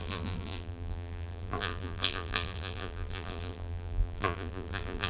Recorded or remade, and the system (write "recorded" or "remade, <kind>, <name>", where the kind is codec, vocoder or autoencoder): remade, vocoder, BigVGAN v2